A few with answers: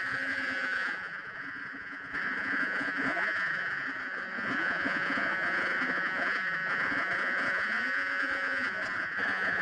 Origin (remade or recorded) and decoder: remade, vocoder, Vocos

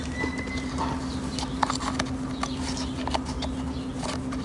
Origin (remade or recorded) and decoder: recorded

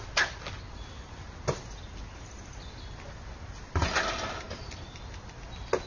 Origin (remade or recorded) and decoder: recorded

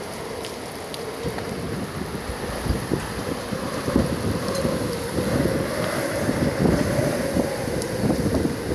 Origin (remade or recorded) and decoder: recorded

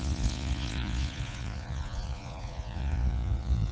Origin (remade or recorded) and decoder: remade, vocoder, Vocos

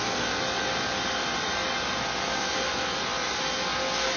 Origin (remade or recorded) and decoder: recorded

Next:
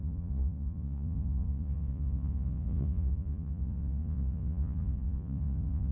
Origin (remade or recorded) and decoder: remade, vocoder, Vocos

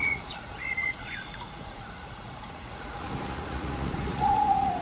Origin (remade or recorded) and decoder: remade, vocoder, Vocos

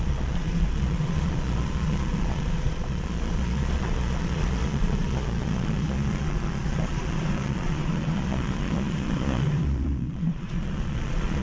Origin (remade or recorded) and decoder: remade, vocoder, Vocos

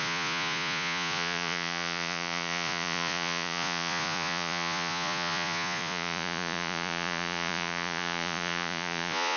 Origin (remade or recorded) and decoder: remade, vocoder, Vocos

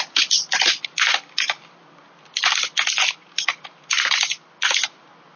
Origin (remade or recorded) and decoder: recorded